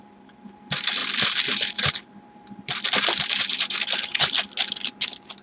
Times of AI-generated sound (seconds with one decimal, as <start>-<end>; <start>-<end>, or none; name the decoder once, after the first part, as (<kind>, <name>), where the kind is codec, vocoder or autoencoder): none